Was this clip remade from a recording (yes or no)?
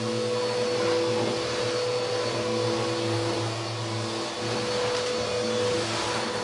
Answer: no